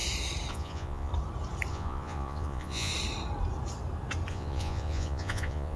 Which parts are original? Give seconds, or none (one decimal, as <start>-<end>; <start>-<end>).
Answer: 0.0-0.5; 1.1-1.7; 2.9-4.3

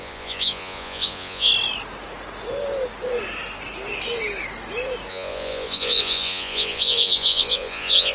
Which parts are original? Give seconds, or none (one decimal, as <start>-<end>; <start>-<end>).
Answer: 1.5-5.1

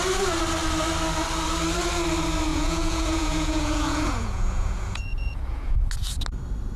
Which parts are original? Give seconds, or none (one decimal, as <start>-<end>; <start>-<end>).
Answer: 0.0-2.5; 5.9-6.8

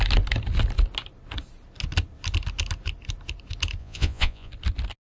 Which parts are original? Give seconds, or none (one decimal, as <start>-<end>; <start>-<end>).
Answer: 0.0-3.8; 4.5-5.1

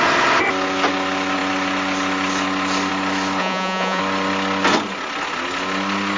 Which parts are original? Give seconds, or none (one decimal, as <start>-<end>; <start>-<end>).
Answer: 0.0-3.4; 4.0-6.2

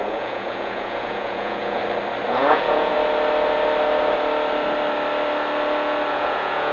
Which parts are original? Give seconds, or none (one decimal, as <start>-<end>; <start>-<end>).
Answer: 1.8-2.3; 2.9-6.1